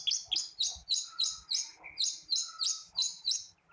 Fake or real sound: real